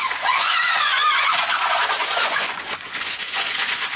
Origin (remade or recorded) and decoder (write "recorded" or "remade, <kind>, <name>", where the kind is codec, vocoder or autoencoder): remade, vocoder, Vocos